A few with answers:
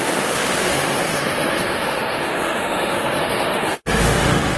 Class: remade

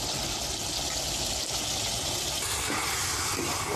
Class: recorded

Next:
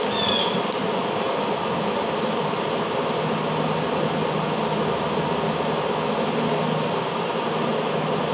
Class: recorded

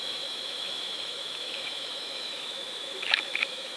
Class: remade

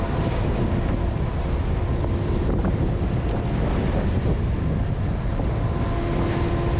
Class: recorded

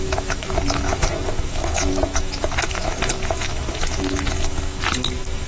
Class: remade